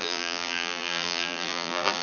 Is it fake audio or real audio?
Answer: fake